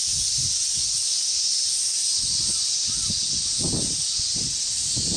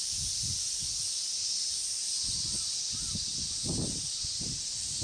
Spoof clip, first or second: second